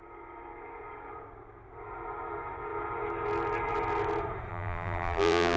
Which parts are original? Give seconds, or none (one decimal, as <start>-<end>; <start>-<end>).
0.0-4.5

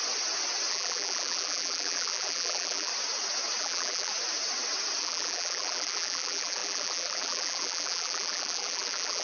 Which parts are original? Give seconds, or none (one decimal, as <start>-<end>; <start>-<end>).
0.0-0.7; 2.9-3.6; 4.1-5.0